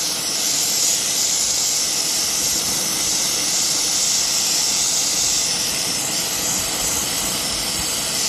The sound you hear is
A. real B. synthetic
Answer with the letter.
A